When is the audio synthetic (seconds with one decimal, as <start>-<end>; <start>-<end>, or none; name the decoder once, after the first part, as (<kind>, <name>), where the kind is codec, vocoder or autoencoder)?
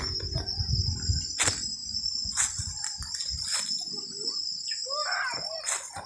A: none